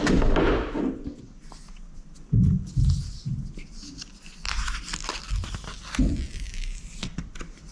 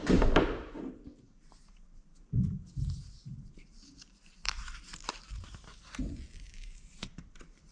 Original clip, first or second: first